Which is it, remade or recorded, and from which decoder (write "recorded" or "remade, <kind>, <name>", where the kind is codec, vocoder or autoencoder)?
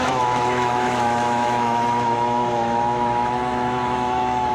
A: remade, autoencoder, DAC-VAE